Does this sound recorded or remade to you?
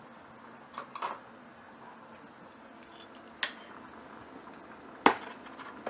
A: recorded